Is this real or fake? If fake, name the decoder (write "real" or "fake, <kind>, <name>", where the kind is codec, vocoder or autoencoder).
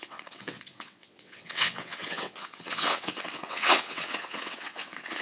fake, vocoder, WaveNeXt